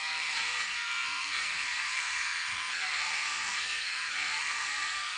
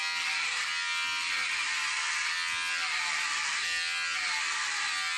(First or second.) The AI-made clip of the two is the first